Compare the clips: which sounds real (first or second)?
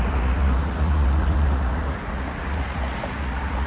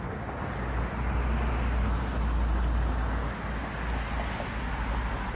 second